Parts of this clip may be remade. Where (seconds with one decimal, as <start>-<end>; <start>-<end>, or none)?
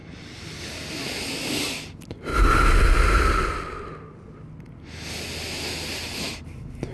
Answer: none